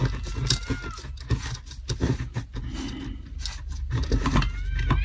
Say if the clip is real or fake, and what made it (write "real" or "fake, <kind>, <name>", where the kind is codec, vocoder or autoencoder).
real